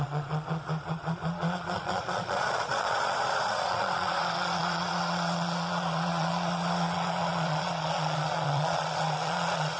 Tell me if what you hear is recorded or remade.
remade